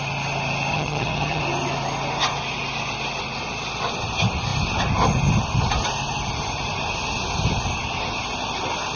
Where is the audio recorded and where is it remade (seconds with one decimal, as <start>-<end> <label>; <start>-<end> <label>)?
0.0-0.7 recorded; 0.7-1.4 remade; 1.4-9.0 recorded